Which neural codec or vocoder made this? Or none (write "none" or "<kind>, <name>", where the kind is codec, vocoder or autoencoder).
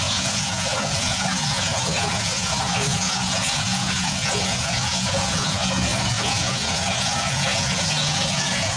vocoder, Vocos